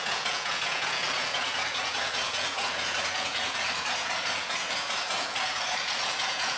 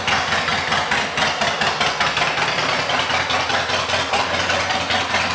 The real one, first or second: second